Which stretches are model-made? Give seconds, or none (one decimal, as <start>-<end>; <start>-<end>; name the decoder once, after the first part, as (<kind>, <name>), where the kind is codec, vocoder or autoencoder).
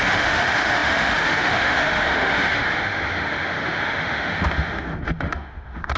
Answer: 0.0-6.0 (autoencoder, DAC-VAE)